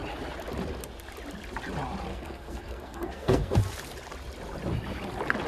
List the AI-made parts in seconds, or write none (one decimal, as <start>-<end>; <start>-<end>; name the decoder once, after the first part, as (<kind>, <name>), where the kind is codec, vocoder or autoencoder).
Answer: 2.1-3.6 (codec, SNAC)